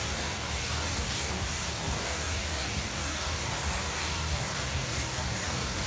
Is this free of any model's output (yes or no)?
no